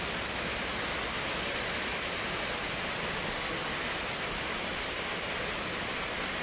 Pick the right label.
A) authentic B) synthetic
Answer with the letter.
A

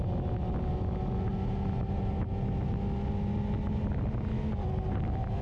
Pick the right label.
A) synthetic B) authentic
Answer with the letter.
B